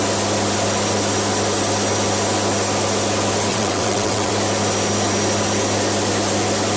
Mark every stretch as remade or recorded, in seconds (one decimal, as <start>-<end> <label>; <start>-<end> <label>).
0.0-3.5 recorded; 3.5-4.3 remade; 4.3-6.8 recorded